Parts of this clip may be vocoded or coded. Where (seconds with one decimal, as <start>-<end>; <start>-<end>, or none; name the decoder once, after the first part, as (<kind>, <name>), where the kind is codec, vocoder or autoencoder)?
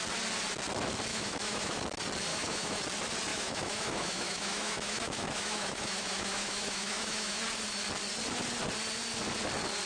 1.1-1.8 (autoencoder, DAC-VAE); 2.3-2.8; 3.3-7.4